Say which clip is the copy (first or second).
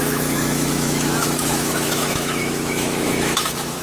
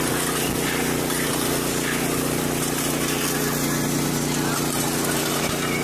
first